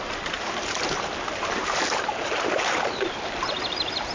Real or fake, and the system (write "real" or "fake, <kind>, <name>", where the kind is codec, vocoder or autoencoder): fake, vocoder, BigVGAN v2